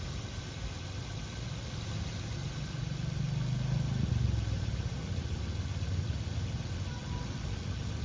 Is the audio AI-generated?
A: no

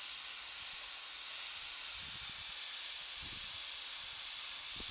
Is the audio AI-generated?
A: no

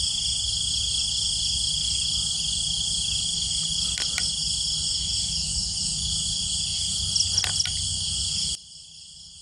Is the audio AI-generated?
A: no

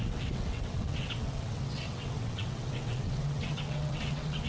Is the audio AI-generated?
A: yes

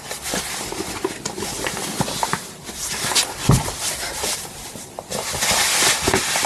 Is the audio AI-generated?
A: no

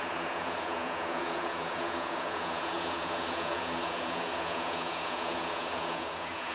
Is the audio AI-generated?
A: yes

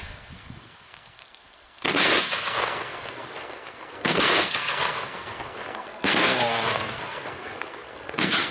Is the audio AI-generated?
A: yes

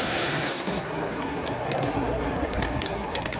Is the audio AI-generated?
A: yes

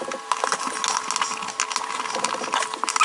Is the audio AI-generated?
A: no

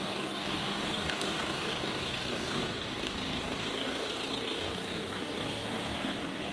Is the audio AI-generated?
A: yes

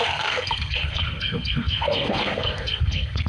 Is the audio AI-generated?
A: yes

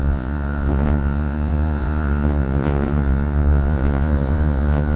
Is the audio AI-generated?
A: yes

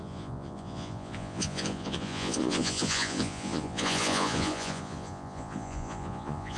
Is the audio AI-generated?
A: yes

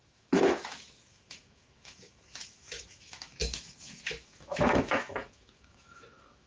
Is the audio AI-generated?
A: yes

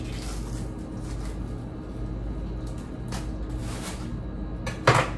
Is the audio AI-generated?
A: no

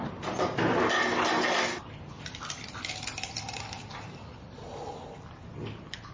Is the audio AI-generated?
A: no